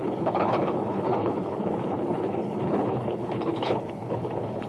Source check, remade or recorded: remade